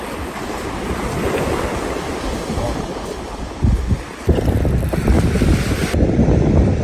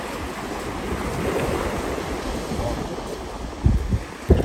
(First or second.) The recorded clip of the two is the second